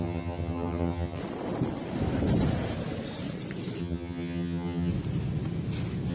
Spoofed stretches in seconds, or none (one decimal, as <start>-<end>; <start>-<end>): 0.0-1.2; 3.8-4.9